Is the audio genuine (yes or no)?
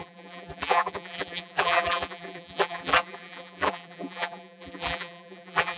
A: no